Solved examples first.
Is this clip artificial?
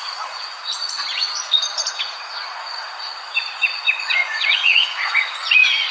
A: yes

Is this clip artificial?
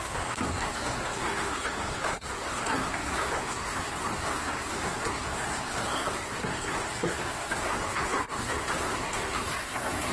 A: yes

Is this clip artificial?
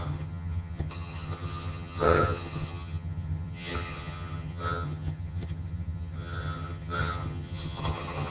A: yes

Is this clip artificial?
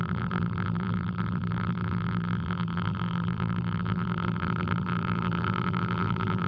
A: yes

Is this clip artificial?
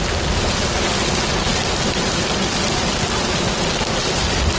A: no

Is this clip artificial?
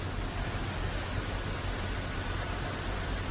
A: no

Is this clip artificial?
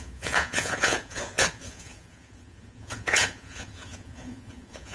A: yes